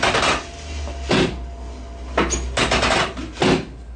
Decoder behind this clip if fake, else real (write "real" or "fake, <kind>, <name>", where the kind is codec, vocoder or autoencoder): real